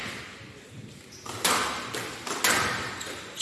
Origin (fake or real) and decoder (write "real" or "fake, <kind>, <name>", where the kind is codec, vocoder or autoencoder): real